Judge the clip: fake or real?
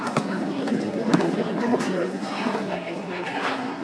fake